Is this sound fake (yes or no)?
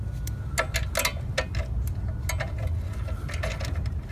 no